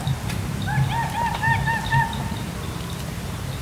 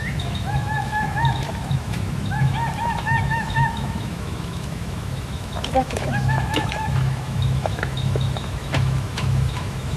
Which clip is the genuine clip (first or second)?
first